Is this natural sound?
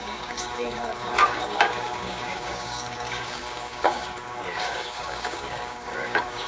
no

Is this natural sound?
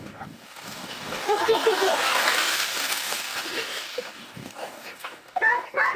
no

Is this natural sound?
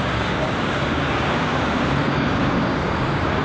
no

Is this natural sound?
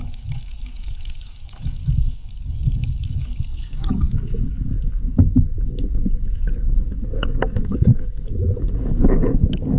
no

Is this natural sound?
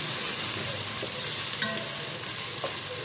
yes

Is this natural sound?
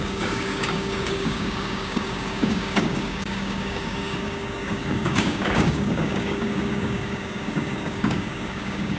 no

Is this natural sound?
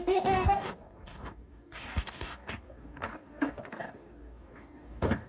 no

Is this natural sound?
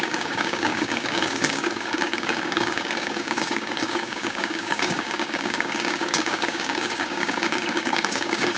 no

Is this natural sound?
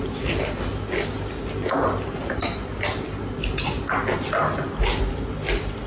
yes